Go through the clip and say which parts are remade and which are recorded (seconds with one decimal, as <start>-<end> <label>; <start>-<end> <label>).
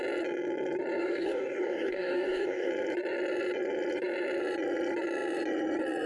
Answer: 0.0-1.0 recorded; 1.0-2.7 remade; 2.7-6.1 recorded